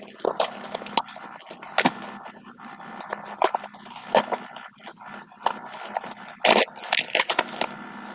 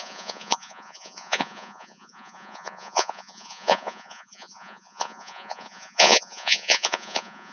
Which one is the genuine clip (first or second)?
first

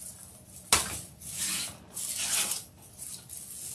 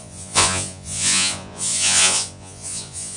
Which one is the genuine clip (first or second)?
first